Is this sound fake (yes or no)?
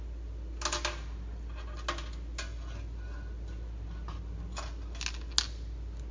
no